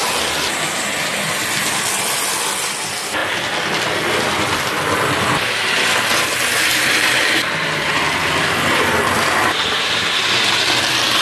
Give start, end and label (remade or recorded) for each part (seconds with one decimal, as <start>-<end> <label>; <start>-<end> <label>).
0.0-11.2 recorded